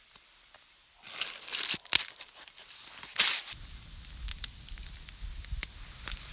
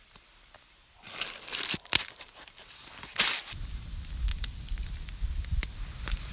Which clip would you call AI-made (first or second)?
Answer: second